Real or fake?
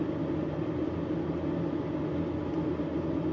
real